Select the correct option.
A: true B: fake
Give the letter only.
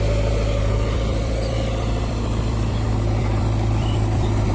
B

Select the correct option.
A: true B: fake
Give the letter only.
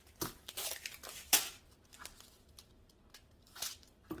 A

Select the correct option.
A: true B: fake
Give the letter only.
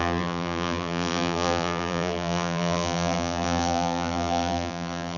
B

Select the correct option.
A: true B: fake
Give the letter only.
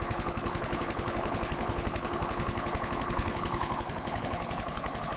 B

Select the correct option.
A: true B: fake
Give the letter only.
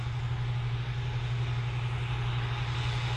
A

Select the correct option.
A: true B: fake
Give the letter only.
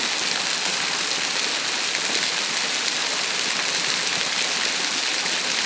A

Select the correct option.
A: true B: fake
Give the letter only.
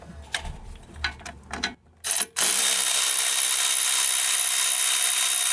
A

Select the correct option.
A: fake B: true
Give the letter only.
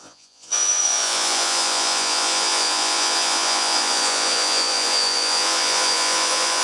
A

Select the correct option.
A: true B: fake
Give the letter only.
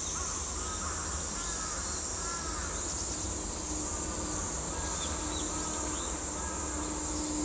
A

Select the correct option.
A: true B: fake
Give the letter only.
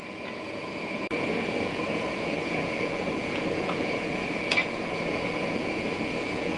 B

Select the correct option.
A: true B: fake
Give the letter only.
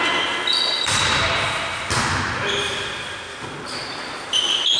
A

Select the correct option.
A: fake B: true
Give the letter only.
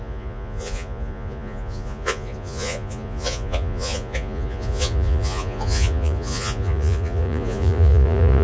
A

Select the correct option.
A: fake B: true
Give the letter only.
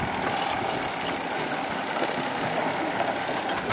B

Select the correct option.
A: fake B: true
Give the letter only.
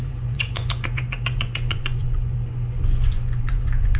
A